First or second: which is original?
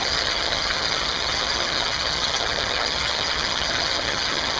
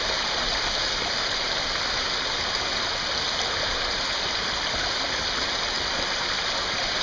second